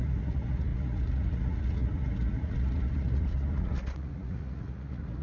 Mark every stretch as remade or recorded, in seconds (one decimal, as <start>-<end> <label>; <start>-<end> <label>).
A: 0.0-5.2 remade